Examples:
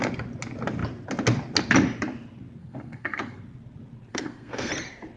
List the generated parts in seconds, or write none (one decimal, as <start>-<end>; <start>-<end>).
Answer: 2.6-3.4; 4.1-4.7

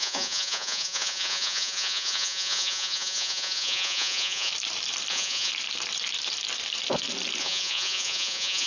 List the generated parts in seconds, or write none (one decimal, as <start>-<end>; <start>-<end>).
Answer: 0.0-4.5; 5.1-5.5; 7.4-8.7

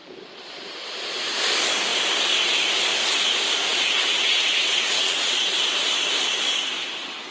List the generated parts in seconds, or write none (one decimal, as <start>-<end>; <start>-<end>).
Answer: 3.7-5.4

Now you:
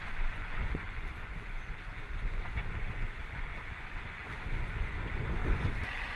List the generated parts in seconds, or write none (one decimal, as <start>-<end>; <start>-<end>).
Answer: 0.0-6.2

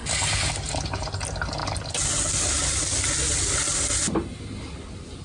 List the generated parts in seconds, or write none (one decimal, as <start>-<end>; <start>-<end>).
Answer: none

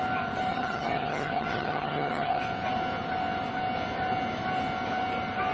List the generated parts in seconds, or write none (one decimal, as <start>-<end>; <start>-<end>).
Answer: 0.5-2.4

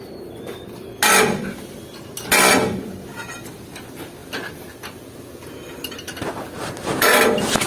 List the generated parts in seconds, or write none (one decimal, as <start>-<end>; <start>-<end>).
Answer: none

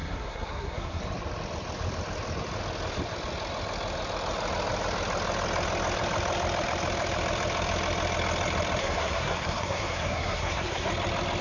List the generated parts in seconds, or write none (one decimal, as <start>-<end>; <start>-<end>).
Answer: 0.0-1.0; 8.8-10.9